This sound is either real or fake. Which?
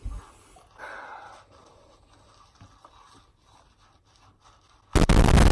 real